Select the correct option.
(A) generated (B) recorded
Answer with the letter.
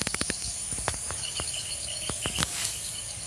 A